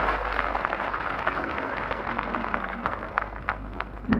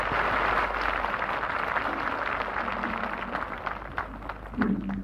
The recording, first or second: second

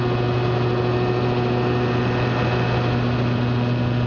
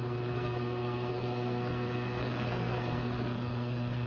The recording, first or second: first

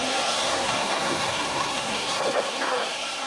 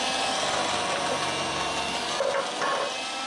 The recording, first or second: second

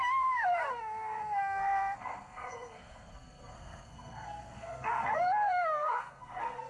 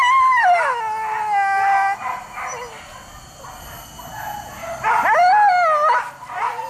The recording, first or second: second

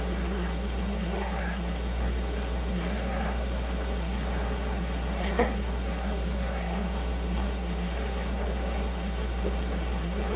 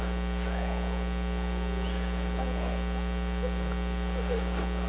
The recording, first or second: second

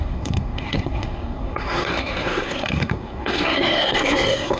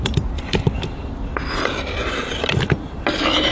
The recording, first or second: second